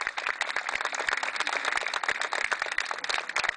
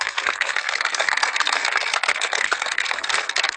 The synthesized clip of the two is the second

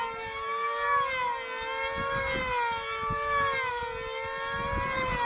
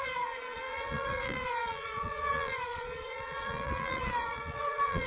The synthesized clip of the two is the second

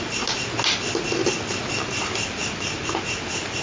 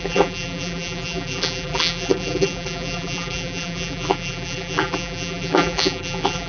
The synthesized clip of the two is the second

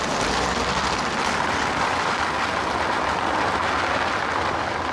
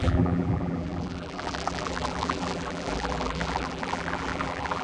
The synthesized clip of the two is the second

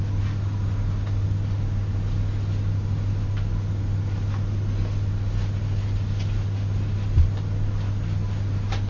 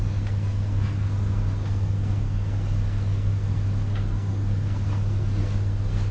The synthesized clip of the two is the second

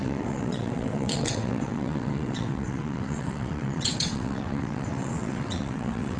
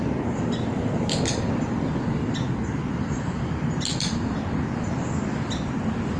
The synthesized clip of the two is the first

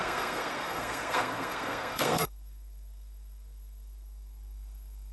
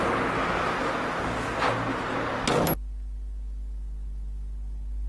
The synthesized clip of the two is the first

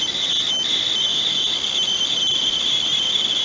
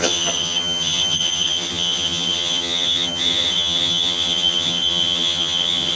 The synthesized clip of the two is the second